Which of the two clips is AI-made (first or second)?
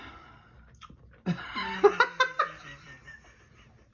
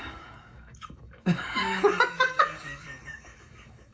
second